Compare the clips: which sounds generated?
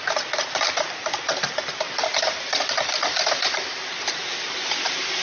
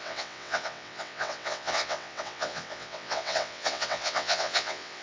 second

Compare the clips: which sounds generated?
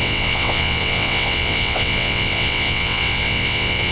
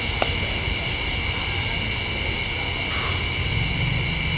first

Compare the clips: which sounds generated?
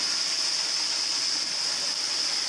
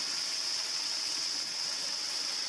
second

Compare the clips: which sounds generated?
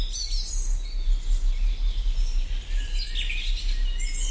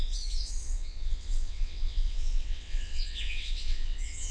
second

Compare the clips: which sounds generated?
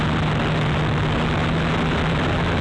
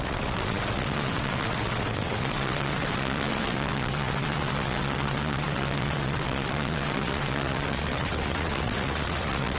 second